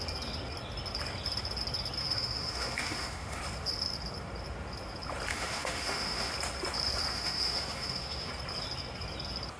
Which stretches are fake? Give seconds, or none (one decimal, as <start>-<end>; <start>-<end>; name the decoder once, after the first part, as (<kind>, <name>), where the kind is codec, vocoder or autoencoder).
2.0-3.4 (autoencoder, DAC-VAE); 5.3-6.3; 7.1-8.3